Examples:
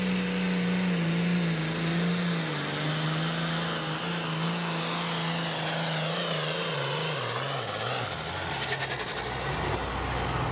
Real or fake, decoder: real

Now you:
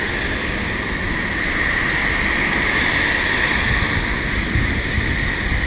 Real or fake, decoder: real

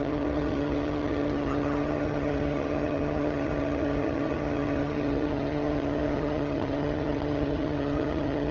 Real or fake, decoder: fake, vocoder, HiFi-GAN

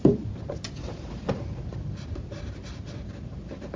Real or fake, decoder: real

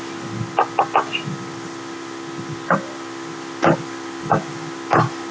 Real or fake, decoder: real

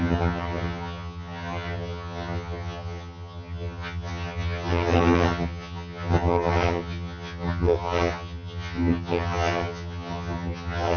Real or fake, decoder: fake, vocoder, HiFi-GAN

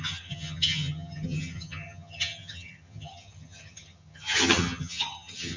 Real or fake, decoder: fake, vocoder, HiFi-GAN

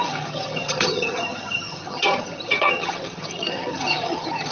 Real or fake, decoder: fake, vocoder, HiFi-GAN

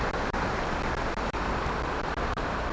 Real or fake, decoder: real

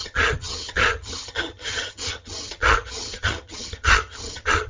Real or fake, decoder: fake, vocoder, HiFi-GAN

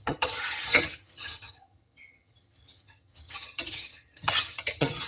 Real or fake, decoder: fake, vocoder, HiFi-GAN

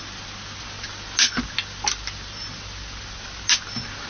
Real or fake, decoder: real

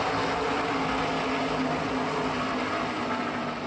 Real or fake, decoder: real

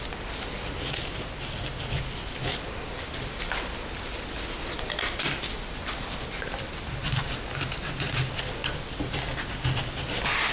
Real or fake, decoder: real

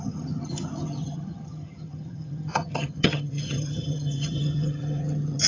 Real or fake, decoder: fake, vocoder, HiFi-GAN